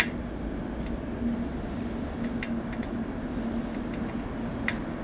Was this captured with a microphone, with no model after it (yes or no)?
yes